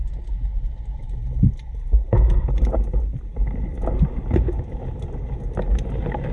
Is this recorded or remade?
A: recorded